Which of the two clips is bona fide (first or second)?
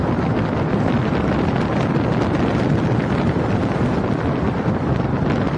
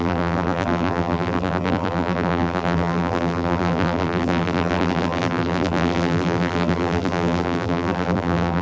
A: first